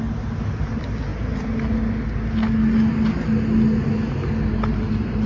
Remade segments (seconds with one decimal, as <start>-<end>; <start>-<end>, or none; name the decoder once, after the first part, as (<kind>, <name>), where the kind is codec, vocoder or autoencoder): none